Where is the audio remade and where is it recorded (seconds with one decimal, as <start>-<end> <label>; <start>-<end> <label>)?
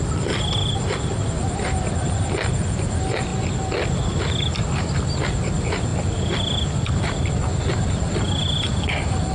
0.0-9.3 recorded